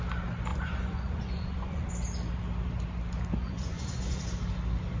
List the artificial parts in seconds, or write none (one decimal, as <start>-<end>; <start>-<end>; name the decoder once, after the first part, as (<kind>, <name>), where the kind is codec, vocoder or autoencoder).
0.5-1.9 (vocoder, Vocos); 3.4-4.2